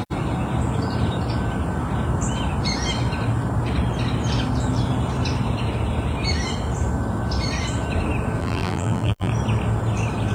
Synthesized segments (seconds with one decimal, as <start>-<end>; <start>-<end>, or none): 8.4-9.3